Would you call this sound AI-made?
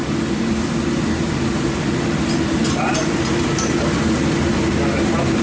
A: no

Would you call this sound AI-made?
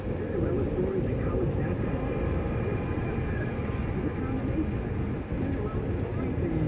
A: no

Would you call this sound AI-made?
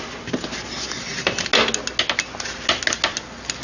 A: no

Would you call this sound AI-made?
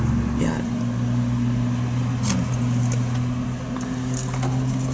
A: no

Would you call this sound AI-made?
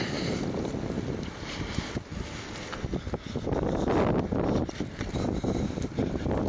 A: no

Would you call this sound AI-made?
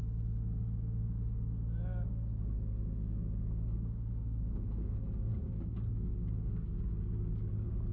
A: yes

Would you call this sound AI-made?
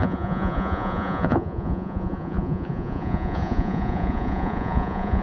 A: yes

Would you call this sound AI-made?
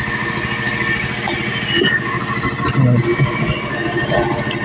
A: no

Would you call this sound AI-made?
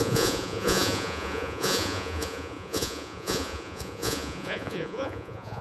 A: yes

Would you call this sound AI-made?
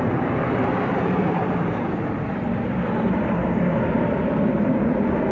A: no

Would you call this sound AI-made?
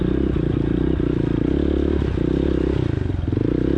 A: no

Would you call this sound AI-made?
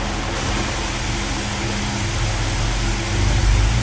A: no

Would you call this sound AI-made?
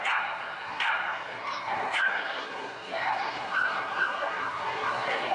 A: yes